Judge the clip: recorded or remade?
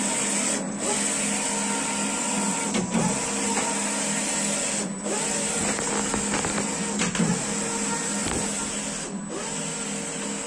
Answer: recorded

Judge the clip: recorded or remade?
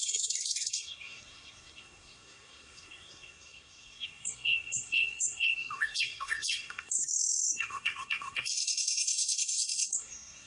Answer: remade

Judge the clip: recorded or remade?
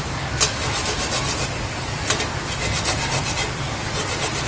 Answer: recorded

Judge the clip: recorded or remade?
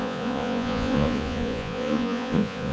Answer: remade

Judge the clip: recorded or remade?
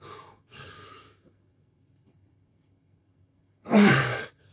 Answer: remade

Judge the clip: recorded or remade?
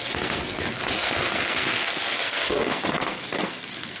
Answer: remade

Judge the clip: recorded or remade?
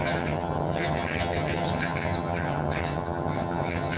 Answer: remade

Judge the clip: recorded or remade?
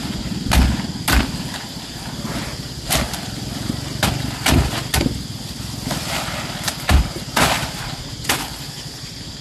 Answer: recorded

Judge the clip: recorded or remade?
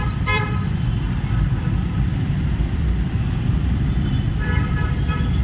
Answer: remade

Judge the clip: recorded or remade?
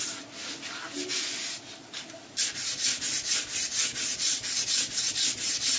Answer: recorded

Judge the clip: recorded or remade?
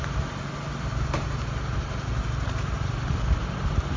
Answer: recorded